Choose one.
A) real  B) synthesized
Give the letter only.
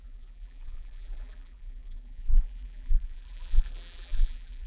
B